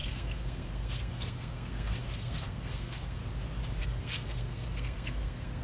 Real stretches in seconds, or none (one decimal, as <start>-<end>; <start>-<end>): 3.2-3.8